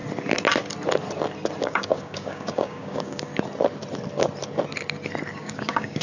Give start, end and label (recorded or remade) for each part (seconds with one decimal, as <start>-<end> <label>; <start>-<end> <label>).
0.0-1.6 recorded; 1.6-3.3 remade; 3.3-5.3 recorded; 5.3-6.0 remade